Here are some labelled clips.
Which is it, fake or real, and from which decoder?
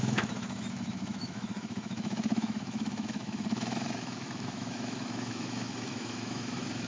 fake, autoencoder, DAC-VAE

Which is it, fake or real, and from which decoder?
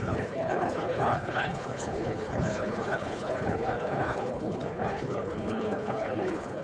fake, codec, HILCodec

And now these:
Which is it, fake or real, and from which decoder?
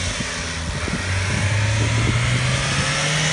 real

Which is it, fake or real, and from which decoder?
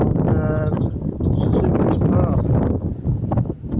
real